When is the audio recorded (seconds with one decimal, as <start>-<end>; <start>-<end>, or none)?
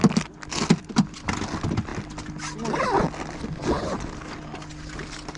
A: 0.0-5.4